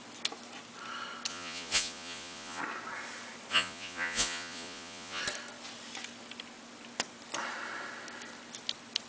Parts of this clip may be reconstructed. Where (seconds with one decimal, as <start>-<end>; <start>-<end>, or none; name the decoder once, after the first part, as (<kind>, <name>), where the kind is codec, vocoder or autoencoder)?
1.3-2.6 (vocoder, Vocos); 3.5-5.2